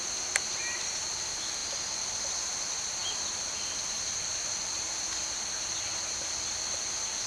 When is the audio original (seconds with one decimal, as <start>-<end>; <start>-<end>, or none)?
0.0-7.3